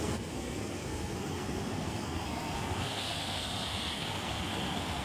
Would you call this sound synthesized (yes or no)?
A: yes